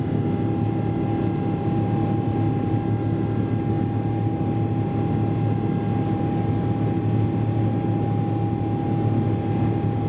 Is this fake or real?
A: real